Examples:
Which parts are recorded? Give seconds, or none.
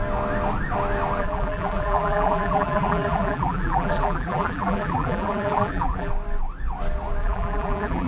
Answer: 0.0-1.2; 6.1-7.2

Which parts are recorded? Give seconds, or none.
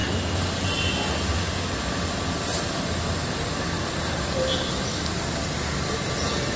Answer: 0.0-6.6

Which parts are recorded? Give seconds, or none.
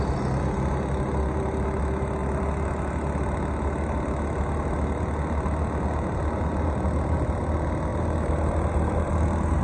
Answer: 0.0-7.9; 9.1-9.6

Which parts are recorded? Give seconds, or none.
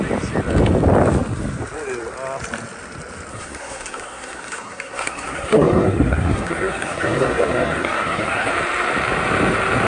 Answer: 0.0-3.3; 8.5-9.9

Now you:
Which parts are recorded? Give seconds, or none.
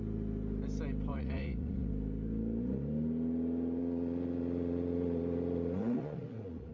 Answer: 0.0-1.1; 1.9-3.8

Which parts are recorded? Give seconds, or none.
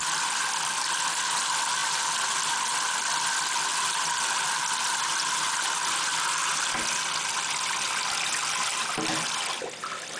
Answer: 0.0-10.2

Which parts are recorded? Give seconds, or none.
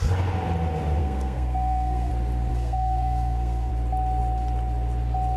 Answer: 0.0-1.0; 2.1-2.5; 3.7-5.4